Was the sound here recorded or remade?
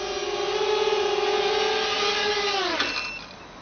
recorded